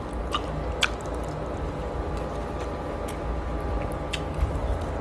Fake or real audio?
real